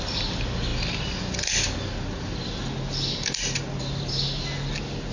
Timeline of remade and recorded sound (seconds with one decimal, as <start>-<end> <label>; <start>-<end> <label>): 0.0-5.1 recorded